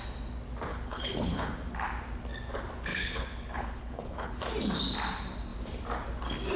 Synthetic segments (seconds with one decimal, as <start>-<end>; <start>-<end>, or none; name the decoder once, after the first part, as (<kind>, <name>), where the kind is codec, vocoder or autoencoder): 0.7-1.5 (codec, HILCodec); 2.9-4.4